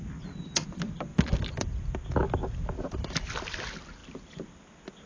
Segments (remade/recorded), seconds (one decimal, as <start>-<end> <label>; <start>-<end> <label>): 0.0-5.1 recorded